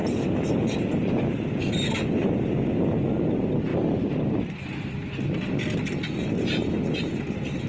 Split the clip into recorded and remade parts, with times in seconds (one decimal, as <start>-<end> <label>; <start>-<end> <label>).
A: 0.0-7.7 recorded